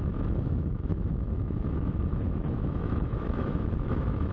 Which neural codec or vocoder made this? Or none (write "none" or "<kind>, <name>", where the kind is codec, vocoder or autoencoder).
autoencoder, DAC-VAE